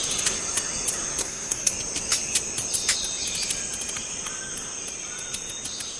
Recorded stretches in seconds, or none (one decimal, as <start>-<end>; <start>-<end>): 0.0-1.2; 1.7-6.0